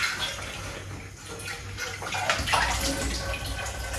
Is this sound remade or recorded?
recorded